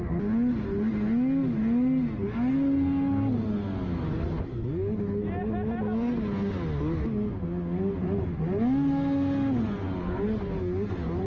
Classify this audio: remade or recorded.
recorded